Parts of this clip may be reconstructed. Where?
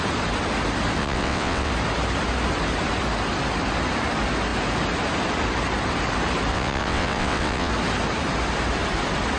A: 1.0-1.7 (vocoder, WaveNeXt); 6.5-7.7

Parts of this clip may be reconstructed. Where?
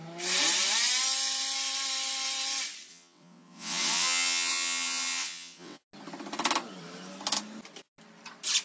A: 2.9-5.8 (vocoder, WaveNeXt)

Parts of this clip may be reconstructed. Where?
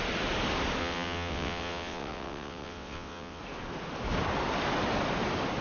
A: 0.8-3.4 (vocoder, WaveNeXt)